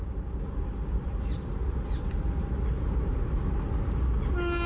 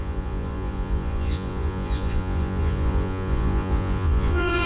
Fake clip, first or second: second